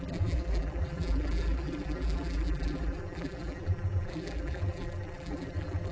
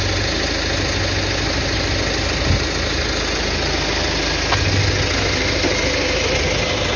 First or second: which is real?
second